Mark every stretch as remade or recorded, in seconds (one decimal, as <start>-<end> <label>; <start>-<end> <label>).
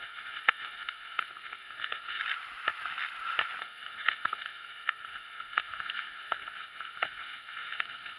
0.0-2.2 remade; 2.2-3.6 recorded; 3.6-8.2 remade